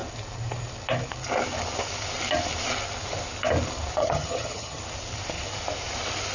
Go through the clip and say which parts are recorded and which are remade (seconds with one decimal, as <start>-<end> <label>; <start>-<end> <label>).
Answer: 0.0-4.0 recorded; 4.0-4.8 remade; 4.8-6.3 recorded